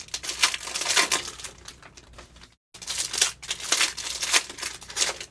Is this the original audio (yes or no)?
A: yes